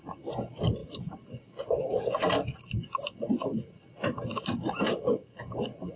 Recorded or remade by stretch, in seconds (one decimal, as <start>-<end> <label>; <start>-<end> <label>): 0.0-6.0 recorded